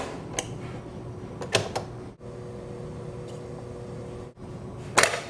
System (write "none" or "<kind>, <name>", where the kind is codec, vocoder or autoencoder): none